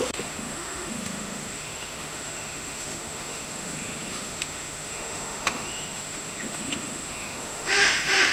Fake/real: fake